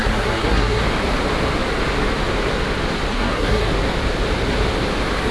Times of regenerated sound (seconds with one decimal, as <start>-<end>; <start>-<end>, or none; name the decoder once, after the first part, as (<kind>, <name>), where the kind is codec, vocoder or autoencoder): 0.0-0.8 (codec, SNAC); 3.1-3.7

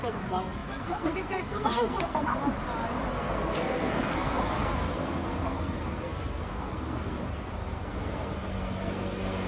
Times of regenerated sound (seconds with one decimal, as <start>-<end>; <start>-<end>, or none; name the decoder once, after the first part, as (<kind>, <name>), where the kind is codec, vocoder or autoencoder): 0.0-2.4 (codec, SNAC); 3.1-9.5

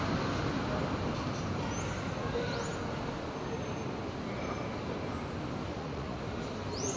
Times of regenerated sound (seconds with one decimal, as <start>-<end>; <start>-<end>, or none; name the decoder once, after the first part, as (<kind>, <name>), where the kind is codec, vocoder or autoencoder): 5.7-6.2 (vocoder, Vocos)

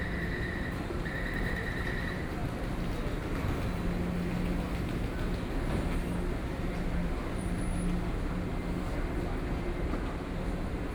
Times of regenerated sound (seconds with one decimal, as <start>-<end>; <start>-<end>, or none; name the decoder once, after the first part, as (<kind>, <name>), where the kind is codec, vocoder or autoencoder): 0.0-2.4 (vocoder, BigVGAN v2); 6.4-7.7; 9.6-10.9

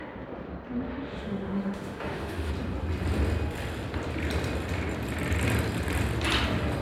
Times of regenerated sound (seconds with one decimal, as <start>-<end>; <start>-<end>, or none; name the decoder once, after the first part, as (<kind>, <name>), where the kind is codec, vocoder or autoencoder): 0.9-2.5 (autoencoder, DAC-VAE)

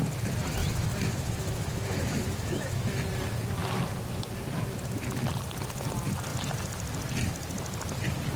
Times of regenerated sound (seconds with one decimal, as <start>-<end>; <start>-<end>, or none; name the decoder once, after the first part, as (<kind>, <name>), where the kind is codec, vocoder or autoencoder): 0.6-3.0 (autoencoder, DAC-VAE)

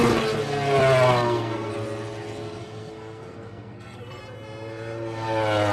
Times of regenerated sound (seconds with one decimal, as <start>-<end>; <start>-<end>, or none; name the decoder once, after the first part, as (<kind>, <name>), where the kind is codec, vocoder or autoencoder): 1.1-1.7 (codec, SNAC); 2.6-4.2

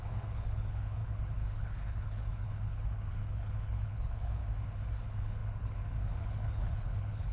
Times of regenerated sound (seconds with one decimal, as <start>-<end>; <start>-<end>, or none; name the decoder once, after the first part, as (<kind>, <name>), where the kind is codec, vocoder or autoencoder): 0.0-4.4 (codec, HILCodec); 5.0-7.3